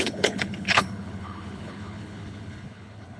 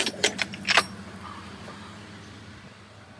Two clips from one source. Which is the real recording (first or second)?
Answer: second